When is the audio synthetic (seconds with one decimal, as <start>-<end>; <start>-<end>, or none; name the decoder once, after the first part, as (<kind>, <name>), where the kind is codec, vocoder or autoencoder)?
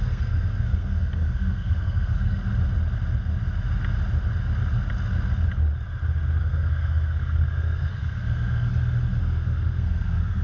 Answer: 0.0-2.4 (codec, SNAC); 6.4-8.7; 9.2-10.4